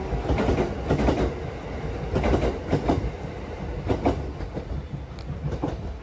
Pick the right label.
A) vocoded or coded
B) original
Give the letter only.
B